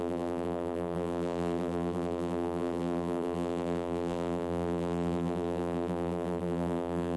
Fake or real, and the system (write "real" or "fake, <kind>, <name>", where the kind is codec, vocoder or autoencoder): fake, vocoder, BigVGAN v2